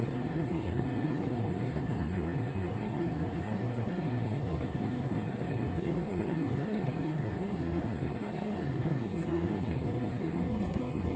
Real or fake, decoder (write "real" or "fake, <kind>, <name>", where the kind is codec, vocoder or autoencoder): fake, codec, SNAC